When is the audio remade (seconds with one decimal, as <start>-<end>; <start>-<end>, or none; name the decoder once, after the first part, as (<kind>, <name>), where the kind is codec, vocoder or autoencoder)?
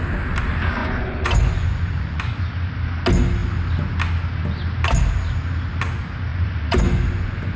0.8-2.2 (vocoder, Vocos); 6.3-7.6